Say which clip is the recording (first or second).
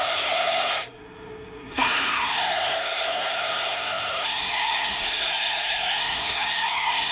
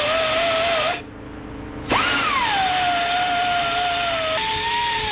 second